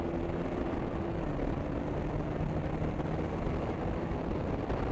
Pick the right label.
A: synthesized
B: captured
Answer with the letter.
A